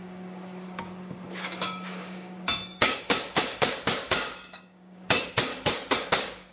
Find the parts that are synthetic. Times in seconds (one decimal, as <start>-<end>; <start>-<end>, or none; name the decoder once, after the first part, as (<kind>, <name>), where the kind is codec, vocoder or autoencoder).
0.0-5.5 (codec, DAC); 6.1-6.5

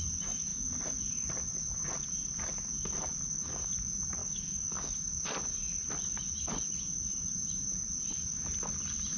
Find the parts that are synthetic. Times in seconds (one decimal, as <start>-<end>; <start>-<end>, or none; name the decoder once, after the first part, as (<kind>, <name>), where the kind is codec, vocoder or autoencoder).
4.2-4.9 (codec, DAC)

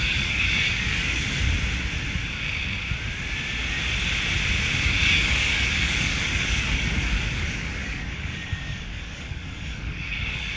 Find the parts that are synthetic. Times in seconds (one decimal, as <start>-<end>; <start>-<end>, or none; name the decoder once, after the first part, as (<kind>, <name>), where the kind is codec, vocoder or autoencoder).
0.0-1.4 (codec, DAC); 4.8-10.6

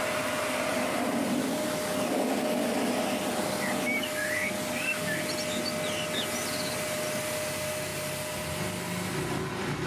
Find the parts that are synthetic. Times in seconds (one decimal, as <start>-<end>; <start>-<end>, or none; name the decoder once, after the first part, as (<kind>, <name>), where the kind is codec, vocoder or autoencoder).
1.4-2.7 (codec, DAC); 3.9-5.1

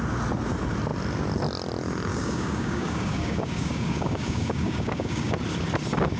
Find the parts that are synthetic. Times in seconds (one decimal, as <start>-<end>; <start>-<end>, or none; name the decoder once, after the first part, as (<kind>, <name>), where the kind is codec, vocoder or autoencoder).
2.1-5.3 (codec, DAC)

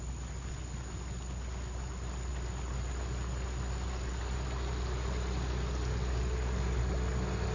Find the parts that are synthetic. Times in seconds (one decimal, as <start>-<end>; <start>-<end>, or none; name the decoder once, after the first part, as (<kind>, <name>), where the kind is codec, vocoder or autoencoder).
none